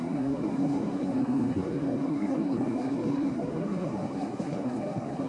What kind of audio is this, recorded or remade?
remade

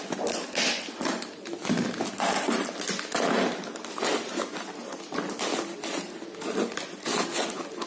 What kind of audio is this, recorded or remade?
recorded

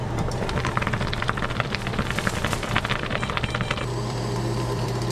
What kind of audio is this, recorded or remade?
remade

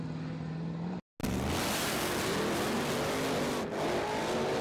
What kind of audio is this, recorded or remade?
recorded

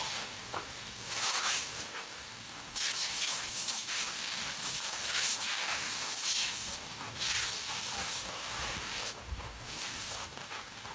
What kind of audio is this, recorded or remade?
remade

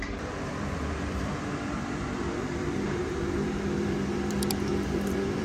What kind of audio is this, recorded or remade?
remade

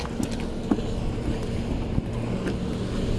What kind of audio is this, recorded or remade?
recorded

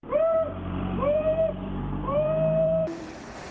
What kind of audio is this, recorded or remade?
remade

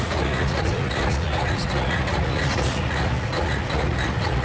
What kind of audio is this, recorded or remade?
remade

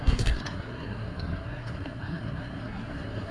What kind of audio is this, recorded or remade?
remade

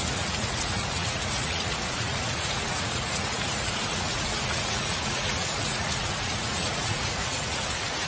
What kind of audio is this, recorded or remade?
remade